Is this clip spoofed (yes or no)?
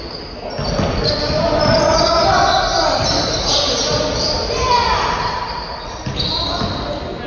no